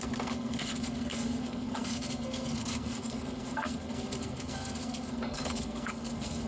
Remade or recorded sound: remade